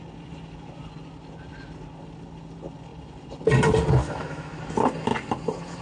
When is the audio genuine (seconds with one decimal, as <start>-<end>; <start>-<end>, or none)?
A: 0.0-4.0; 4.6-5.8